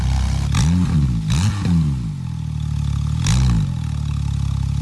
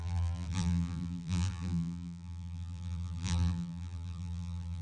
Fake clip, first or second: second